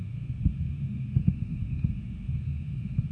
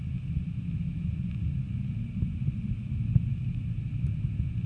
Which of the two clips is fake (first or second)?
first